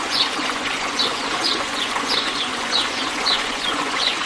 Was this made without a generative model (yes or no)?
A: no